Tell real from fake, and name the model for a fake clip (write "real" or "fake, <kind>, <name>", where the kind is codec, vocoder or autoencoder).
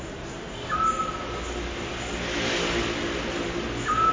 real